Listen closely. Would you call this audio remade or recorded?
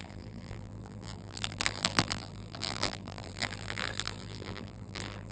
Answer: remade